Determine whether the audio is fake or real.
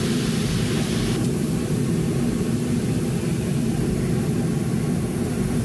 real